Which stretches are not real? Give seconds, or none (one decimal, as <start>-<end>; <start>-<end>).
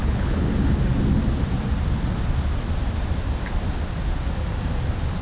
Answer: 0.0-0.5